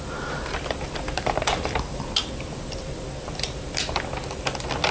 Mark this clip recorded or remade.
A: remade